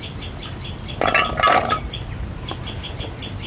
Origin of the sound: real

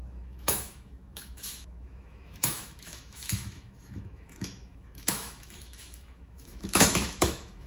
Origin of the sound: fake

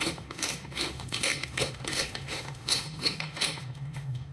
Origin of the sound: fake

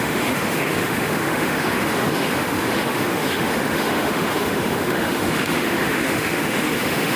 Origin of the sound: fake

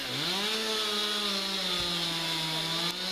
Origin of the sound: real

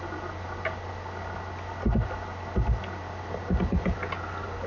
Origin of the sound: real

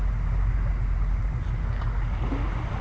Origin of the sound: real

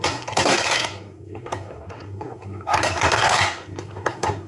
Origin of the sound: fake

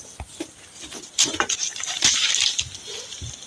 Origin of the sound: real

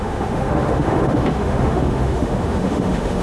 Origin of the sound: fake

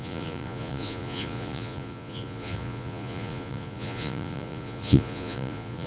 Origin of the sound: fake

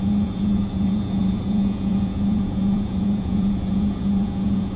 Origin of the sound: fake